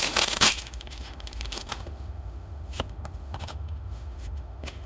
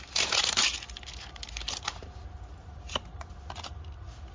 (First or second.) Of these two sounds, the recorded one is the second